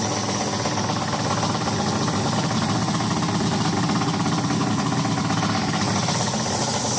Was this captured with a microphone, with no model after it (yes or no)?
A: yes